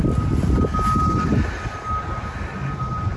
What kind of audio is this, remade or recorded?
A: recorded